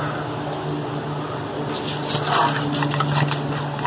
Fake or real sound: real